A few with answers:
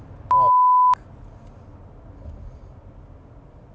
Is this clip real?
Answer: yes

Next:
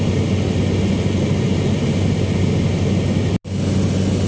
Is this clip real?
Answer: yes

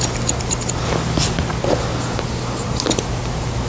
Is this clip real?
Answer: yes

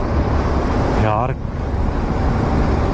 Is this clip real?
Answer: yes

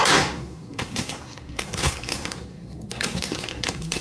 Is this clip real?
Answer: no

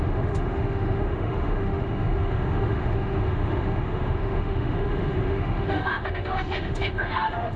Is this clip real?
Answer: no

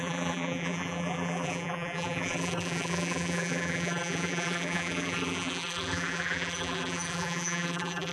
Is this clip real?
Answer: no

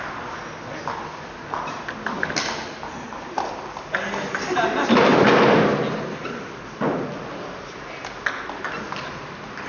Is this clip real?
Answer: yes